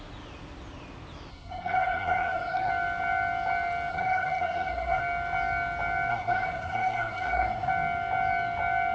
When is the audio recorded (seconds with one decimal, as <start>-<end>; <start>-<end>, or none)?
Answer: 0.0-1.3; 2.7-3.9; 5.0-6.1; 7.7-8.9